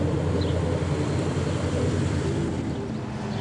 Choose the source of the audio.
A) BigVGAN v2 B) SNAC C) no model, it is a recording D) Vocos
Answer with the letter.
C